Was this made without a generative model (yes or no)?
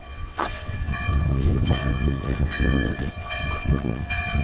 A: no